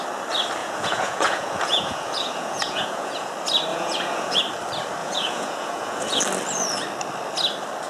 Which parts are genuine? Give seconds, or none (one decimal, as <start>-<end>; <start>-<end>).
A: 0.0-0.6; 3.3-3.7; 4.4-5.0; 6.2-7.9